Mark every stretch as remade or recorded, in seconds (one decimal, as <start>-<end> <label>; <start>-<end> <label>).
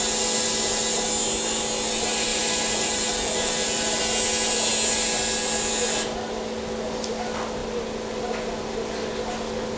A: 0.0-2.3 recorded; 2.3-4.0 remade; 4.0-9.8 recorded